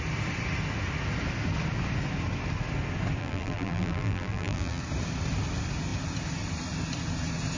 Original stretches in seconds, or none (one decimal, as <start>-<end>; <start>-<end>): 0.0-3.2; 4.8-7.6